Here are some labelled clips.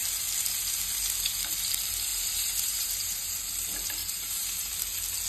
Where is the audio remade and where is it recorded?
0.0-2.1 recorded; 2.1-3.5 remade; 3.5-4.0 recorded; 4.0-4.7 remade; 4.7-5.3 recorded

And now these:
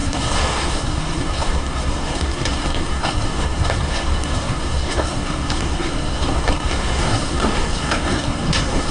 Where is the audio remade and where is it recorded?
0.0-8.9 remade